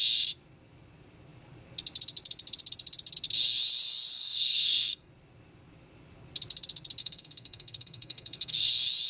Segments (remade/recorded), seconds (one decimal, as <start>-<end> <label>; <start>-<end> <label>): 0.0-4.2 recorded; 4.2-5.1 remade; 5.1-7.0 recorded; 7.0-8.7 remade; 8.7-9.1 recorded